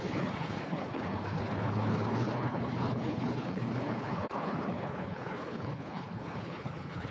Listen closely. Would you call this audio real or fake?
fake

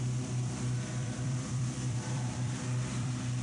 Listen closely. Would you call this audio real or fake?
fake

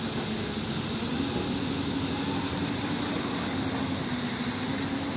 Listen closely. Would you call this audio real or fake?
real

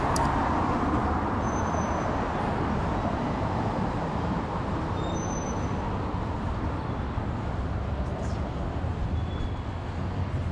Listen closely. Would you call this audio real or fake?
real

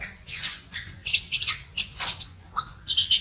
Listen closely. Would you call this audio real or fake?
fake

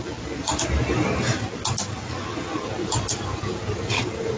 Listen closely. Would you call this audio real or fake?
real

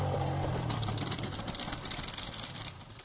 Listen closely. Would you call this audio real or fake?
real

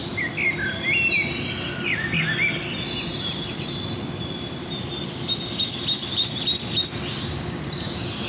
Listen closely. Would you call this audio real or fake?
real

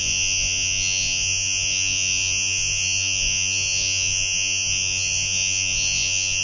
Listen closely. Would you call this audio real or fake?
fake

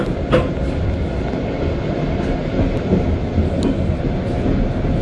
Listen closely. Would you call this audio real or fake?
real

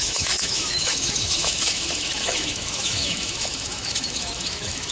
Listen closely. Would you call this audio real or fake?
fake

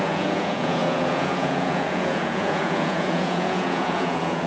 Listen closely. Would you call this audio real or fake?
fake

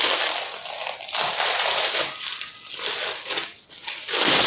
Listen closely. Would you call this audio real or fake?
real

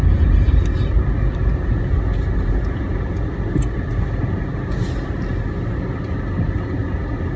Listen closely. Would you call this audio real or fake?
real